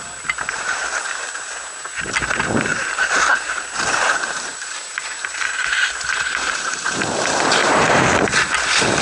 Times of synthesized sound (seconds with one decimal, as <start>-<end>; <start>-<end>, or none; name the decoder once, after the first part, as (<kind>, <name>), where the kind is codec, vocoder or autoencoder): 2.7-7.0 (vocoder, BigVGAN v2); 7.6-8.1

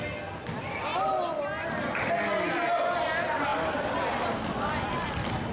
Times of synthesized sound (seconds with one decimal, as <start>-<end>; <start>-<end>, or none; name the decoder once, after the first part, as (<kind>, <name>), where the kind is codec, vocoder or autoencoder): none

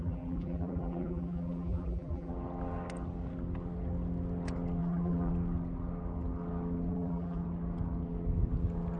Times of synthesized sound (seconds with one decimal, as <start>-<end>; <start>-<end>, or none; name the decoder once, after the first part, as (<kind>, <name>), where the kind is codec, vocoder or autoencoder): 0.0-2.3 (vocoder, BigVGAN v2); 4.8-5.3; 6.9-7.4